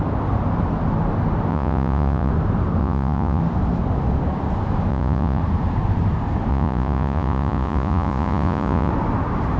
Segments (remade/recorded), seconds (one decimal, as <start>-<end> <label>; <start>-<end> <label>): 0.0-1.5 recorded; 1.5-2.3 remade; 2.3-2.8 recorded; 2.8-3.4 remade; 3.4-4.9 recorded; 4.9-5.4 remade; 5.4-6.5 recorded; 6.5-8.9 remade; 8.9-9.6 recorded